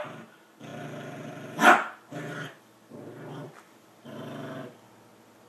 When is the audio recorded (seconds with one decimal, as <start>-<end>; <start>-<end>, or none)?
0.0-5.5